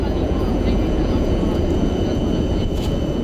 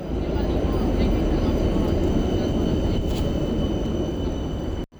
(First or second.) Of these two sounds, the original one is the second